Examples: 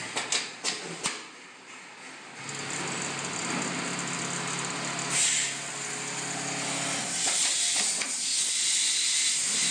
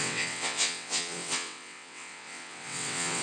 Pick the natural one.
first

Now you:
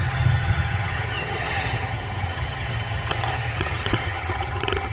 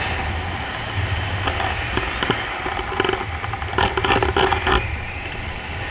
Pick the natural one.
second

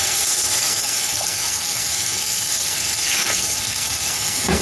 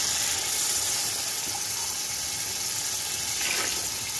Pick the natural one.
second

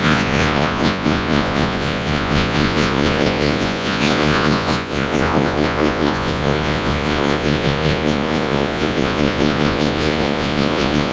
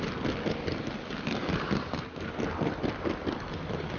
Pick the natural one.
second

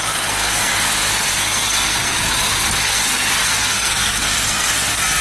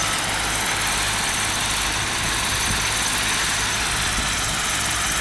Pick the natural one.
second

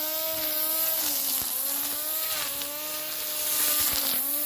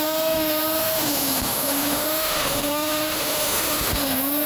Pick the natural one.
first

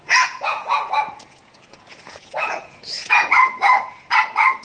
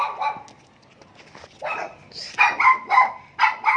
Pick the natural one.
second